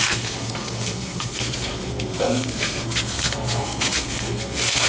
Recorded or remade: remade